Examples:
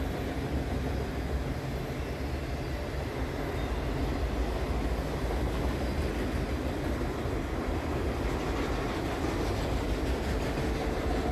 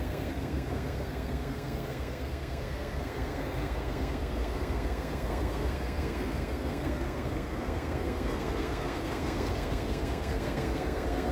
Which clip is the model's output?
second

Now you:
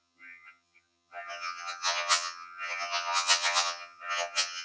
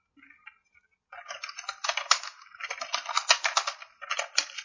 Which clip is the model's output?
first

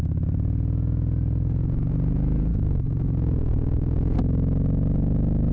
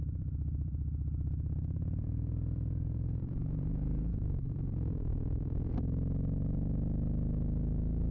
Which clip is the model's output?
second